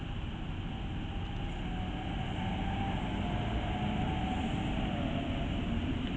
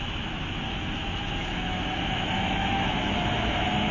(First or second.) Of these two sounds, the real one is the first